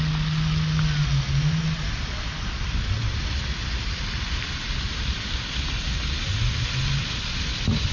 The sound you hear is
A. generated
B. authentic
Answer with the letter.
B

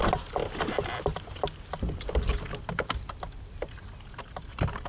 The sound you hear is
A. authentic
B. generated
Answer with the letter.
A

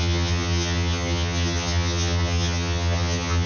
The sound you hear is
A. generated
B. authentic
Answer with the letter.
A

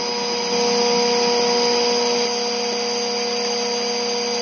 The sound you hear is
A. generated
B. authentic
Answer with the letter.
B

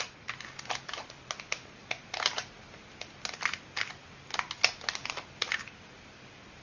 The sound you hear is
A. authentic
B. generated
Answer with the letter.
A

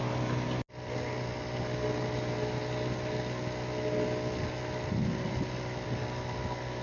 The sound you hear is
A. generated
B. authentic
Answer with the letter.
B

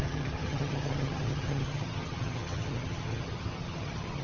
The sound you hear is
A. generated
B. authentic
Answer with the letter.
A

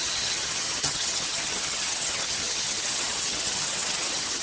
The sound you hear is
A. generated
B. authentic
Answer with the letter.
A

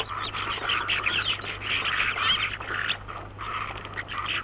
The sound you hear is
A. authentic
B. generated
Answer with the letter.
A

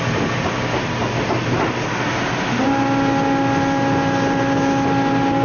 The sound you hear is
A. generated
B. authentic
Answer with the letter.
B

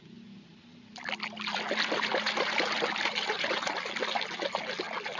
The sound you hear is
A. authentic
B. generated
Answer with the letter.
A